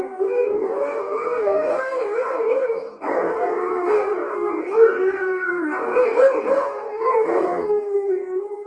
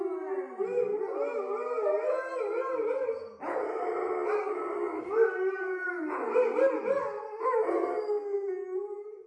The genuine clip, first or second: second